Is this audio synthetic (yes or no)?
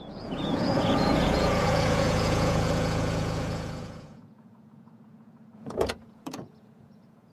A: yes